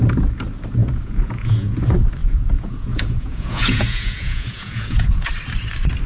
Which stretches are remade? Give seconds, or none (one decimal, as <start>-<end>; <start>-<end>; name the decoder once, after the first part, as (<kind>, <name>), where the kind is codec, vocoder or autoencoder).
0.8-1.8 (vocoder, Vocos); 2.2-5.3